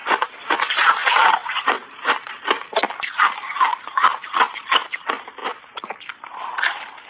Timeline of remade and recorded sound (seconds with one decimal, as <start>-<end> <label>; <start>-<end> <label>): 0.0-5.4 remade; 5.4-6.4 recorded; 6.4-7.1 remade